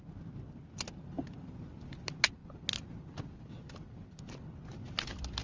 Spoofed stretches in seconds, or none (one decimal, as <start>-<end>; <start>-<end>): none